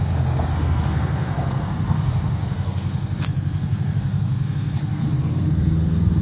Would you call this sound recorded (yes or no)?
no